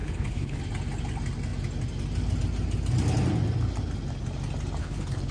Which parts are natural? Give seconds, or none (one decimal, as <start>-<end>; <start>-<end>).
0.6-4.8